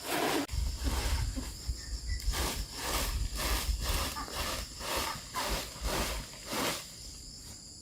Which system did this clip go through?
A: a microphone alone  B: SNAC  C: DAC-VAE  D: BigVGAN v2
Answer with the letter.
A